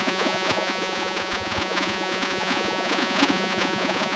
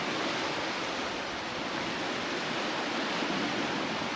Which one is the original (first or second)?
second